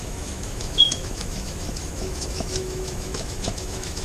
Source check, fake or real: fake